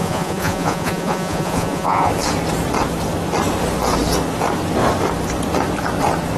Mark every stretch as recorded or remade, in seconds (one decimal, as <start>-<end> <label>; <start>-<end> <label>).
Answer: 0.0-2.1 remade; 2.1-6.4 recorded